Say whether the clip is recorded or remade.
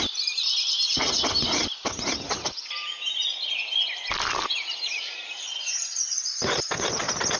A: recorded